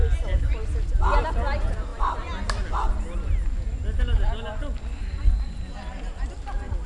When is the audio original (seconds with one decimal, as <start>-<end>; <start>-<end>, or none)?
0.0-6.9